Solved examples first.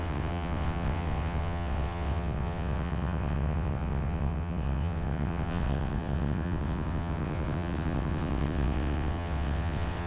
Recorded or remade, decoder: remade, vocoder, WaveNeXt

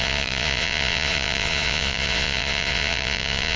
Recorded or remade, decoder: remade, vocoder, Vocos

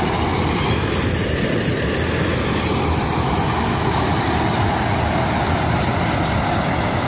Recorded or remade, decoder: recorded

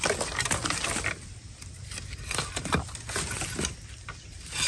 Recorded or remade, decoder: recorded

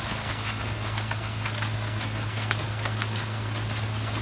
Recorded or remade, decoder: remade, codec, SNAC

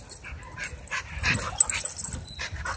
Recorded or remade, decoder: recorded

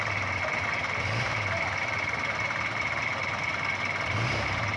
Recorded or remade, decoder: recorded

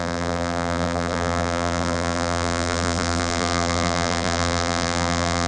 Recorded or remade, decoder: remade, vocoder, BigVGAN v2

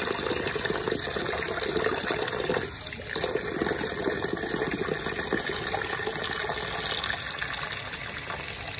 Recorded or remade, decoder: recorded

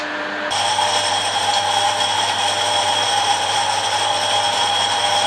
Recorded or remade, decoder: recorded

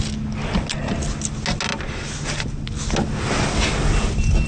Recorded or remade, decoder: recorded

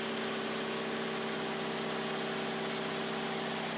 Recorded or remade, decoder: recorded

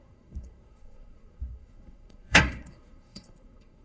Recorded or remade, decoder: remade, codec, SNAC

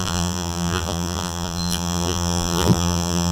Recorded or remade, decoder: remade, vocoder, BigVGAN v2